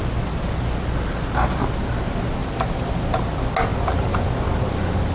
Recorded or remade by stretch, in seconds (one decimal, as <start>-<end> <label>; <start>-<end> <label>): 0.0-2.4 recorded; 2.4-3.0 remade; 3.0-5.1 recorded